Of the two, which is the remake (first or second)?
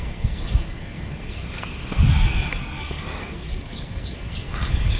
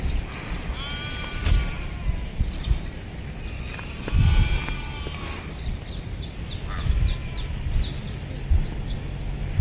first